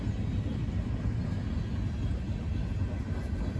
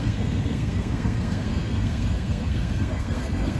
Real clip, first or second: first